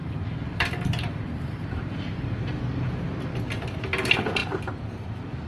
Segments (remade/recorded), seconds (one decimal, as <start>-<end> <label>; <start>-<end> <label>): 0.0-3.3 remade; 3.3-4.4 recorded; 4.4-5.5 remade